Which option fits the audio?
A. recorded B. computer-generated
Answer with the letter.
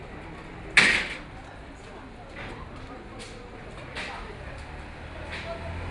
A